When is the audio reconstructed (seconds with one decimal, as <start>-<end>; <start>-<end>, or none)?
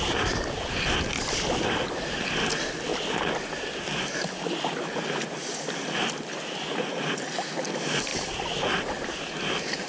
none